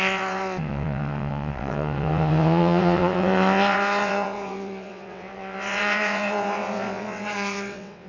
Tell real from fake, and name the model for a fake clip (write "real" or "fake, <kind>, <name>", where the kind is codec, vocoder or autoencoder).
fake, vocoder, WaveNeXt